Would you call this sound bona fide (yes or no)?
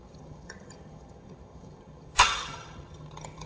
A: no